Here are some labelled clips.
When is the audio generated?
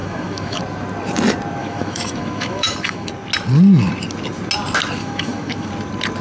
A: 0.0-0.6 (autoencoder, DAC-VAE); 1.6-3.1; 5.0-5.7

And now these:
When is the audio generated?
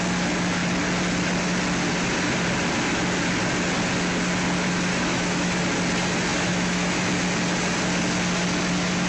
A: 4.9-5.6 (autoencoder, DAC-VAE); 6.3-7.1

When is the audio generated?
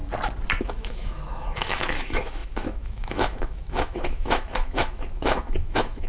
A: 0.6-6.1 (autoencoder, DAC-VAE)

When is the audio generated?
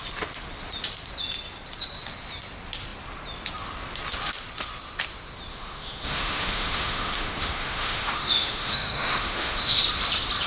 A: 5.5-9.8 (autoencoder, DAC-VAE)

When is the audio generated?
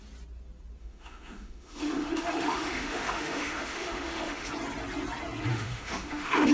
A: 0.8-4.5 (autoencoder, DAC-VAE); 5.5-6.5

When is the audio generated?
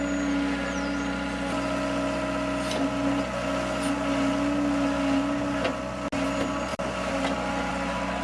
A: none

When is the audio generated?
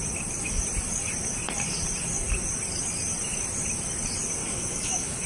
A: 4.4-5.3 (autoencoder, DAC-VAE)